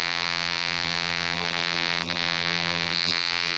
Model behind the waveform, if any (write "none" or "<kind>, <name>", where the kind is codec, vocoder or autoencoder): vocoder, BigVGAN v2